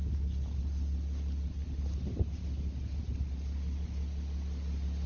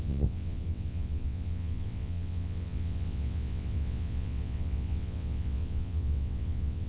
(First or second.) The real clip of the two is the first